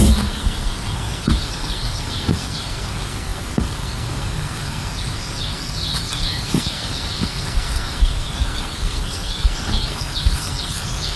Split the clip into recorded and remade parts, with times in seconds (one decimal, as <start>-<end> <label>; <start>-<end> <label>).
0.0-11.2 remade